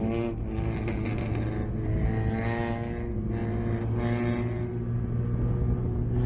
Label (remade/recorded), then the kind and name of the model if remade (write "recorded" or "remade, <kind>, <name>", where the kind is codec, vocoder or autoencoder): recorded